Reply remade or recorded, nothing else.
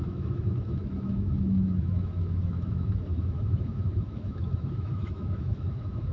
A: remade